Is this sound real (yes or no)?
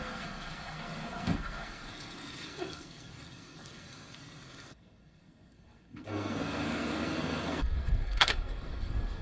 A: no